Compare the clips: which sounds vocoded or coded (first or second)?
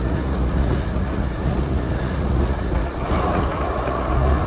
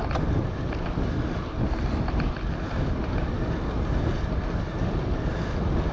first